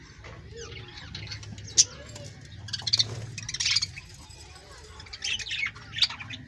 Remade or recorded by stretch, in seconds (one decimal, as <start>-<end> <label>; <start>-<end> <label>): 0.0-6.5 recorded

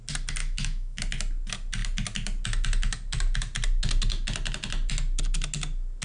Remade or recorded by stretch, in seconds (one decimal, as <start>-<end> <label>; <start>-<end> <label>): 0.0-0.4 recorded; 0.4-1.0 remade; 1.0-6.0 recorded